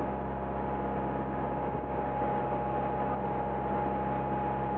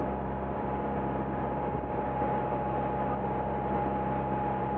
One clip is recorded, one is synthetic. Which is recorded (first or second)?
first